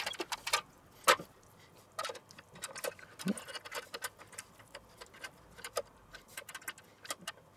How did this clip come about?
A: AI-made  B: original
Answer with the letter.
B